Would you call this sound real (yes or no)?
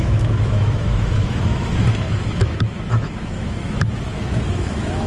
no